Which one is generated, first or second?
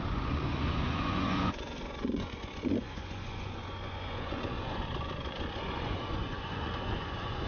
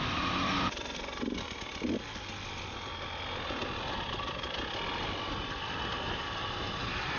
first